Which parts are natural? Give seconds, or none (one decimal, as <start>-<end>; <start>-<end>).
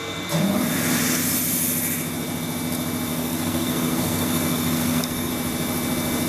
0.0-3.1; 5.3-6.3